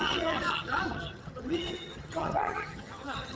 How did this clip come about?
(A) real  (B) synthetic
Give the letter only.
B